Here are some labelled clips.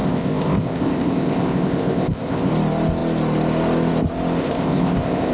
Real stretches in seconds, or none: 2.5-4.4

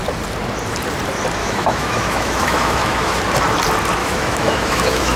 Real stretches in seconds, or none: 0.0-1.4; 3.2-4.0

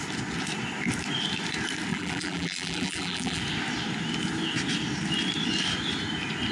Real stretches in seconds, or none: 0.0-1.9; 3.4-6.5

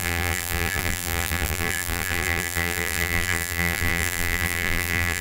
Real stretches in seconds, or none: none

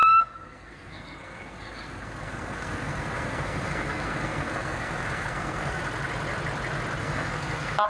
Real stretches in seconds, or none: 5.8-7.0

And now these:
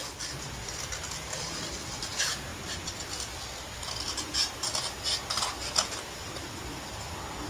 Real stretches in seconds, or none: 0.0-7.5